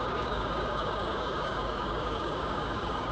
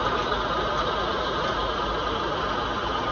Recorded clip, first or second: second